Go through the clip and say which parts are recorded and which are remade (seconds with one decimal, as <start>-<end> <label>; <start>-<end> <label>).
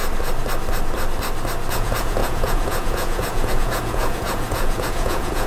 0.0-1.7 recorded; 1.7-5.5 remade